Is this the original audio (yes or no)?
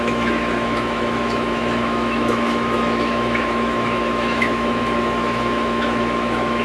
no